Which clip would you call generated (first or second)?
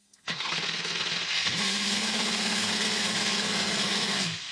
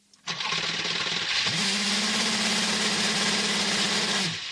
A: first